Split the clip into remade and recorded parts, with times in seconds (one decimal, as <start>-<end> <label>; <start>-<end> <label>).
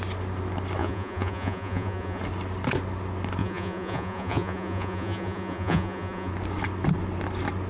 0.0-0.8 recorded; 0.8-2.2 remade; 2.2-3.4 recorded; 3.4-6.3 remade; 6.3-7.7 recorded